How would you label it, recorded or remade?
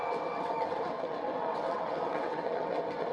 remade